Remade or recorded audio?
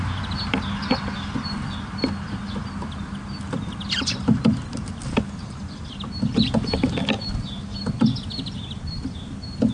recorded